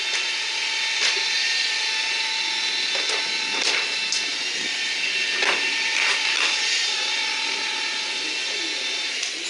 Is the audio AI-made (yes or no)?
no